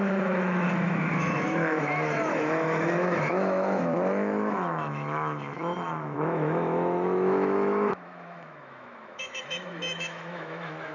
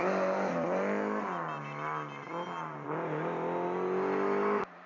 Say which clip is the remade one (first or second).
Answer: first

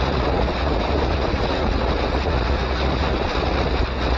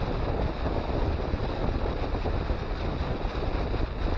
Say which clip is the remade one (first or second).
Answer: first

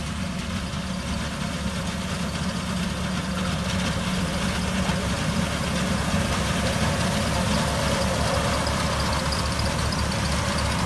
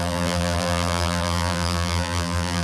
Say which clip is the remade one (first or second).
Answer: second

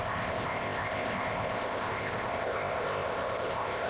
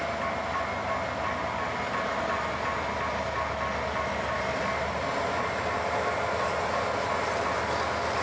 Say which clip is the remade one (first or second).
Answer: first